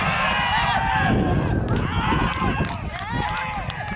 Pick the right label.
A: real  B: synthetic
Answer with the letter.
A